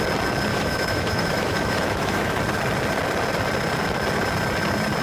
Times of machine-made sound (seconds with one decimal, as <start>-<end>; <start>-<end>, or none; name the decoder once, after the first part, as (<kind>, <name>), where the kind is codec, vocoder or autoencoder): 0.5-2.4 (autoencoder, DAC-VAE)